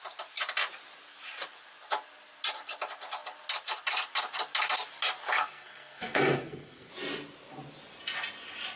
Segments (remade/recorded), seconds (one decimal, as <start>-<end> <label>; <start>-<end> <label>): 0.0-5.4 recorded; 5.4-6.9 remade; 6.9-8.8 recorded